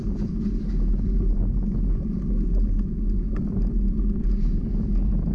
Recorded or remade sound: recorded